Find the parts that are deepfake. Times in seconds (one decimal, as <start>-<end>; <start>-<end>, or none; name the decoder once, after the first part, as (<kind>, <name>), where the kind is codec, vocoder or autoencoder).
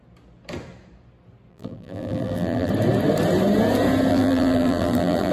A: 1.5-2.7 (vocoder, BigVGAN v2); 4.1-5.3